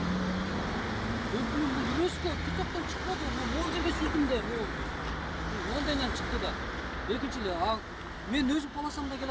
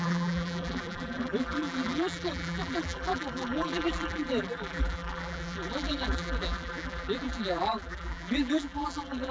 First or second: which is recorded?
first